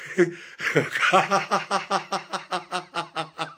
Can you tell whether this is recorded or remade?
recorded